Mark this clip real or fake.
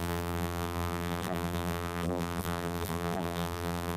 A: fake